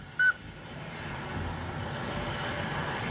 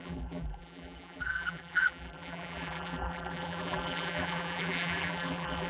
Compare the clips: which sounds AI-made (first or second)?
second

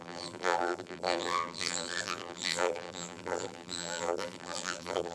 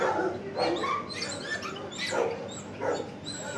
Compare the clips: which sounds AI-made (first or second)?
first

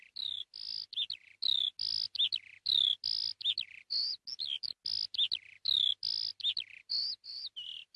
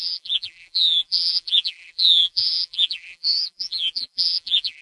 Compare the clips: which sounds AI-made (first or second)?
second